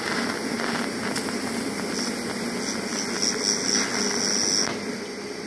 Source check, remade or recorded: recorded